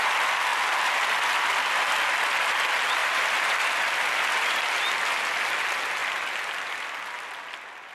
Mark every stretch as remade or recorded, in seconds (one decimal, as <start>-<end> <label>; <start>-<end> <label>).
0.0-0.5 recorded; 0.5-1.0 remade; 1.0-3.0 recorded; 3.0-4.0 remade; 4.0-6.0 recorded; 6.0-6.9 remade; 6.9-7.9 recorded